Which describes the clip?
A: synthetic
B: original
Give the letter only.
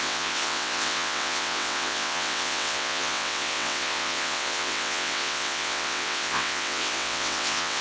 A